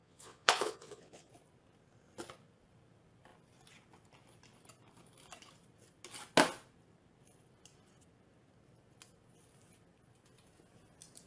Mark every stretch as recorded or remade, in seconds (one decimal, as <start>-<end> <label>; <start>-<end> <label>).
0.0-1.3 remade; 1.3-11.3 recorded